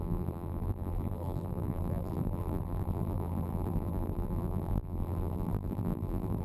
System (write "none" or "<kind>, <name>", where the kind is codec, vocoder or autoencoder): vocoder, BigVGAN v2